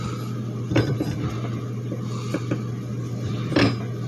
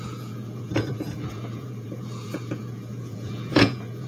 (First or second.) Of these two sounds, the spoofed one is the second